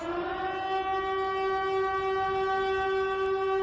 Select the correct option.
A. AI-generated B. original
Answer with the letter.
B